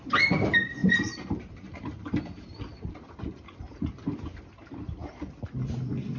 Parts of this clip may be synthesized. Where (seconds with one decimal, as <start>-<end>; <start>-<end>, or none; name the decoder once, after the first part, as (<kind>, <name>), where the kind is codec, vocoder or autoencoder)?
0.8-4.4 (vocoder, BigVGAN v2)